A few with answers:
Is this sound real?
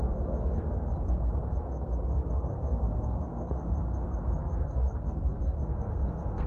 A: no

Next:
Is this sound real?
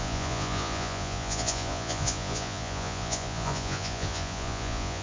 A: no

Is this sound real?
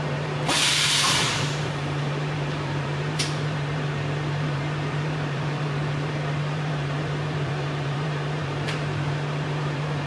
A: no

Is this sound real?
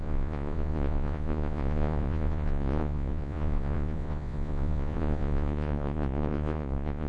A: no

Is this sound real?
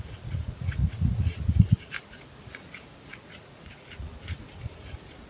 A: no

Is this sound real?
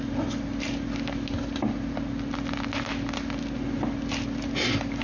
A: yes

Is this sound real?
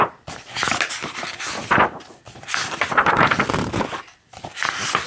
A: no